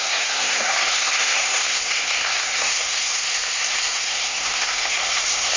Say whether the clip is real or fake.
fake